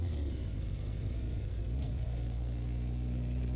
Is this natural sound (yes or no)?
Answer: no